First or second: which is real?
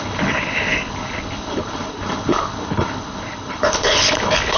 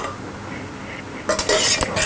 second